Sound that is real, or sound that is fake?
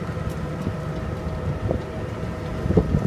real